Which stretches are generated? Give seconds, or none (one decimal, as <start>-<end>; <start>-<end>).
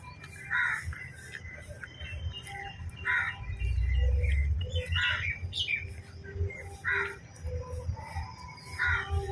none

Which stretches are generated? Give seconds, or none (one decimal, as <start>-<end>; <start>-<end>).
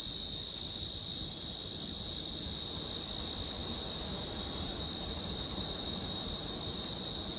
3.6-6.9